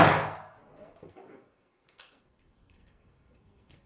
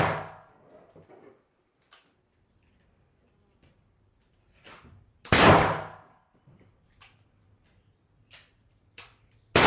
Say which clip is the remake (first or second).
first